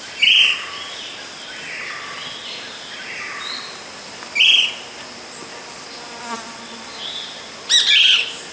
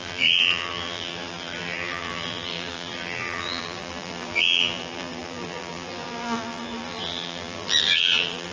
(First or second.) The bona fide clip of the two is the first